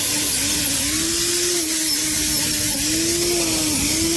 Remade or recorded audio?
recorded